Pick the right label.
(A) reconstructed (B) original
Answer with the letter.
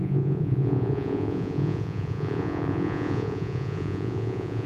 A